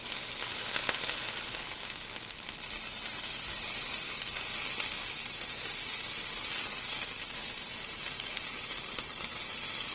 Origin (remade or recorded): remade